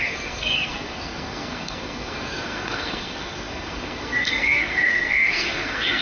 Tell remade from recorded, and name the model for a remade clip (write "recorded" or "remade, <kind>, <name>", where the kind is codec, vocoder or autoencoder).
remade, codec, SNAC